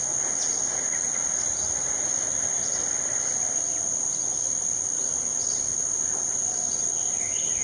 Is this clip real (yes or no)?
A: yes